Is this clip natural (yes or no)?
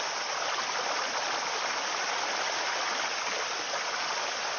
yes